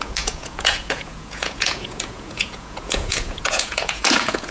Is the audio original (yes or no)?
no